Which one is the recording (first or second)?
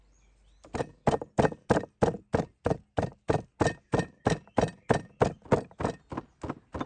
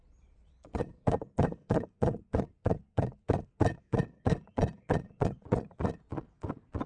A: first